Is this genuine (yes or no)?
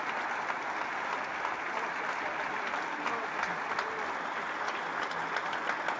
yes